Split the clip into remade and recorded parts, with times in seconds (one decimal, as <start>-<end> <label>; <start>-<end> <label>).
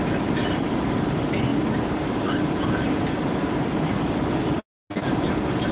0.0-5.7 recorded